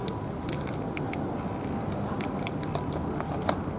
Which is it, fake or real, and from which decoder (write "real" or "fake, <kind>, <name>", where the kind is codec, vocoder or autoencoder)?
real